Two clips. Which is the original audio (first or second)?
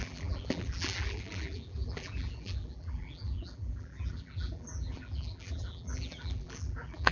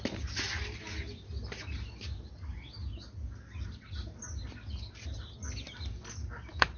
second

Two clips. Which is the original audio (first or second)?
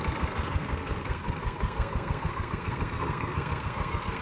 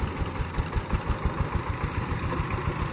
second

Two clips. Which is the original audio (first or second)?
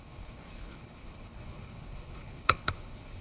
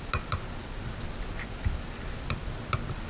second